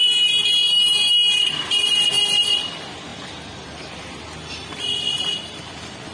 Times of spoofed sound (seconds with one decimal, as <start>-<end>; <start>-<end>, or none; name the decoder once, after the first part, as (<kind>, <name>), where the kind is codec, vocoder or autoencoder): none